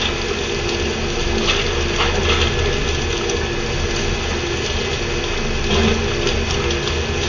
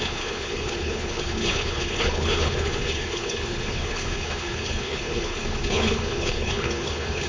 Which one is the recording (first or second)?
first